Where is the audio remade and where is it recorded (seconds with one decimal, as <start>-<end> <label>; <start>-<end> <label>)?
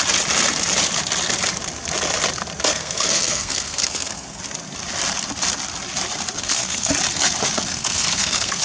0.0-2.7 recorded; 2.7-4.4 remade; 4.4-6.4 recorded; 6.4-6.9 remade; 6.9-7.7 recorded; 7.7-8.6 remade